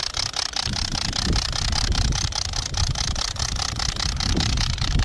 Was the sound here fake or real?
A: real